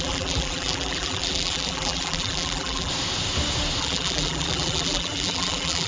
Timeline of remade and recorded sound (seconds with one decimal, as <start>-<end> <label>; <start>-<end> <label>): 0.0-2.9 remade; 2.9-3.8 recorded; 3.8-5.9 remade